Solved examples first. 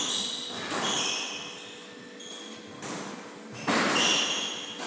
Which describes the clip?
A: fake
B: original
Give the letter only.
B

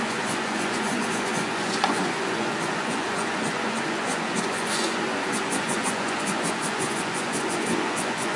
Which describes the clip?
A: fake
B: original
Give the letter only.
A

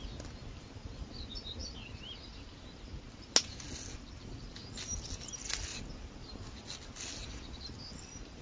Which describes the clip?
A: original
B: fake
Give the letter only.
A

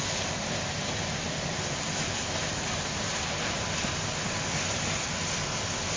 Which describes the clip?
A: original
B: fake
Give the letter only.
A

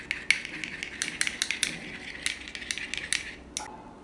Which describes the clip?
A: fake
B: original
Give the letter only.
B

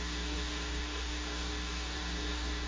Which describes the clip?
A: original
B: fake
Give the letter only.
B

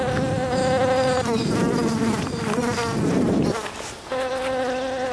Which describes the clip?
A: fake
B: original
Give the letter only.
B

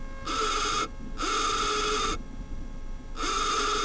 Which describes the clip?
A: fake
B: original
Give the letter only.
B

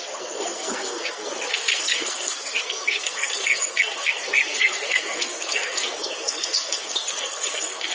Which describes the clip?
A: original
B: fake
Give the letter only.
B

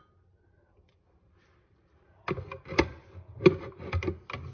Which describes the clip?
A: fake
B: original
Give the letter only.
B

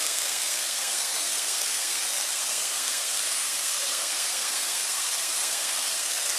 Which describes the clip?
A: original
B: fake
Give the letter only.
B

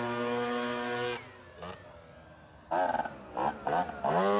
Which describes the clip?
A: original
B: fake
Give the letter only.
A